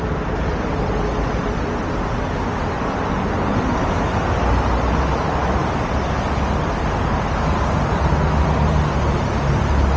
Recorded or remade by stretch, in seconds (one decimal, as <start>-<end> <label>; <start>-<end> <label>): 0.0-10.0 recorded